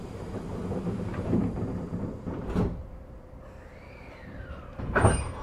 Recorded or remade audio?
remade